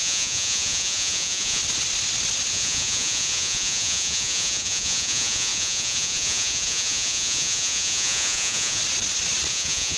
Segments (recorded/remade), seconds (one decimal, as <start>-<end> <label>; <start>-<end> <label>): 0.0-1.6 remade; 1.6-2.5 recorded; 2.5-8.8 remade; 8.8-9.5 recorded; 9.5-10.0 remade